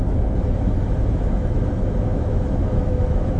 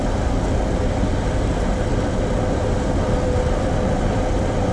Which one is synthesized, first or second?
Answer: first